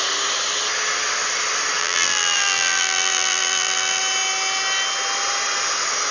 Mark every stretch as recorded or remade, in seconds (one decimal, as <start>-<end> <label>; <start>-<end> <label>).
0.0-1.8 recorded; 1.8-4.0 remade; 4.0-6.1 recorded